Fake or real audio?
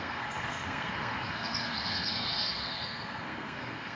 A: fake